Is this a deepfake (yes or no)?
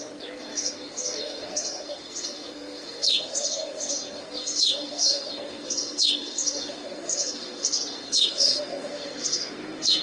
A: yes